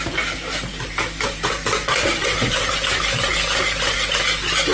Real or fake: real